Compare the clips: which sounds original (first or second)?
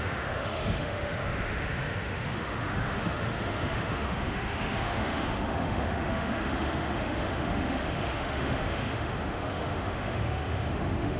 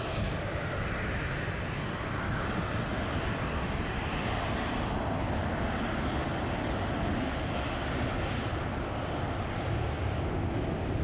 second